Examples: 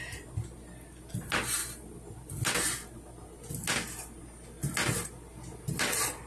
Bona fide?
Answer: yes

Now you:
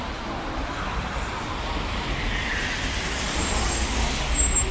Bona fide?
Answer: yes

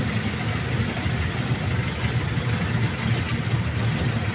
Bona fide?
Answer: yes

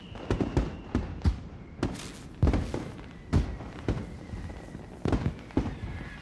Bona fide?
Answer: yes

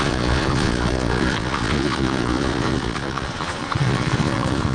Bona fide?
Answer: no